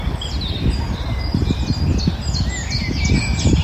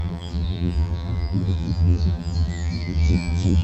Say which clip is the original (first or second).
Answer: first